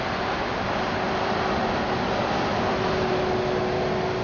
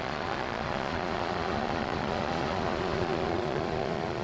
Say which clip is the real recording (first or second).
first